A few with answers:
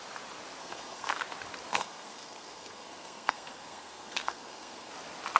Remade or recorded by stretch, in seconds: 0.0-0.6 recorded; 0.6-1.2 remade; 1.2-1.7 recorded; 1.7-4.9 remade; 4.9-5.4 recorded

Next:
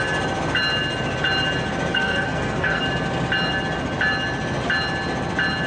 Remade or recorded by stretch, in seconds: 0.0-1.9 recorded; 1.9-2.8 remade; 2.8-5.7 recorded

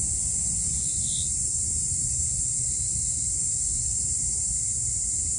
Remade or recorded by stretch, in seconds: 0.0-0.9 recorded; 0.9-4.1 remade; 4.1-5.4 recorded